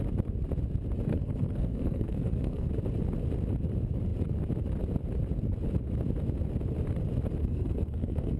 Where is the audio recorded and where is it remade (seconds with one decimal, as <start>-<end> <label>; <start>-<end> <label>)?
0.0-1.1 recorded; 1.1-2.7 remade; 2.7-7.4 recorded; 7.4-8.4 remade